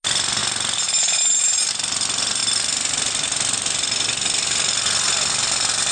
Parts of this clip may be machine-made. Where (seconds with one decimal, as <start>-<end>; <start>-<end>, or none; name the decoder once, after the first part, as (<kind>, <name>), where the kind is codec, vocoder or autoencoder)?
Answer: none